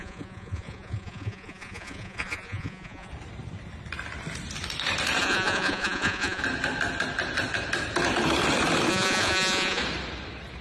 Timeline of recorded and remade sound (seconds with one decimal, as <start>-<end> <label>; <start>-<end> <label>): 0.0-3.1 remade; 3.1-5.2 recorded; 5.2-6.4 remade; 6.4-8.9 recorded; 8.9-9.8 remade; 9.8-10.6 recorded